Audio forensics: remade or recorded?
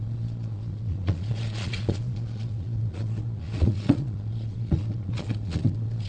remade